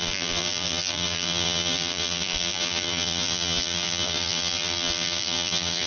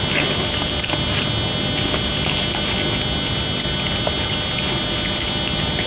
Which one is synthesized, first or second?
first